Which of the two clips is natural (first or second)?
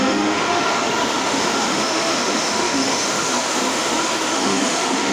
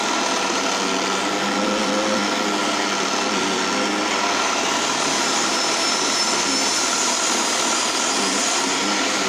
second